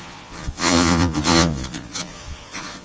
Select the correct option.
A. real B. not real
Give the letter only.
B